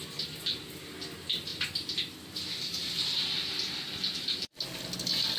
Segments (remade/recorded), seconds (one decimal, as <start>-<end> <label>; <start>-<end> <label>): 0.0-5.4 recorded